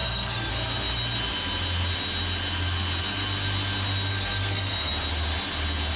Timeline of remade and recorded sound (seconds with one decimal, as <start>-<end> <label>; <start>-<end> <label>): 0.0-0.5 remade; 0.5-4.1 recorded; 4.1-4.9 remade; 4.9-6.0 recorded